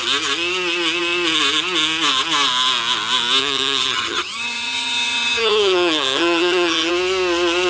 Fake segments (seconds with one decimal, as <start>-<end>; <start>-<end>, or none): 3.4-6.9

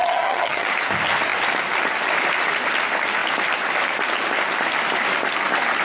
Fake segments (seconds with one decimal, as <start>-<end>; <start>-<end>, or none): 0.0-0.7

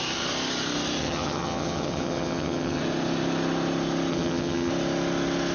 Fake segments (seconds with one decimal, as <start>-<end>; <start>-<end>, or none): 1.0-2.8; 4.1-4.7

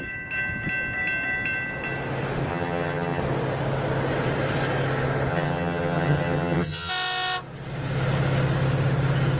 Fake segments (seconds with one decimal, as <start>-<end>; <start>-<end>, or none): 2.5-3.2; 5.3-6.9

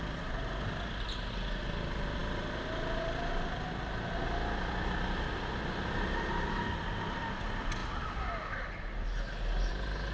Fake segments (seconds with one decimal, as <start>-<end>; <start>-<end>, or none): none

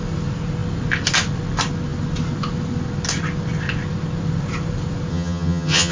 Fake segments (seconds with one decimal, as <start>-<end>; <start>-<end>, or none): 5.1-5.9

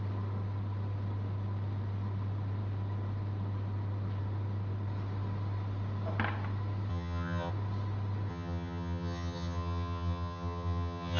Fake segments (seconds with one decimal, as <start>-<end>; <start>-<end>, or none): 6.9-7.5; 8.3-11.2

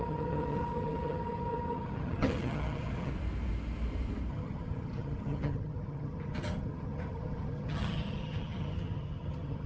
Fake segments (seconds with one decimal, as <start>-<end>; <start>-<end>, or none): 0.0-3.1; 4.3-9.7